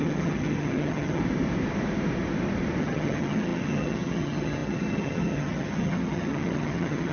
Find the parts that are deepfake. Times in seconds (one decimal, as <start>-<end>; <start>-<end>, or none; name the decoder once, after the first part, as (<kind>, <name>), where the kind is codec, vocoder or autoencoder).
0.0-1.2 (vocoder, HiFi-GAN); 2.8-7.1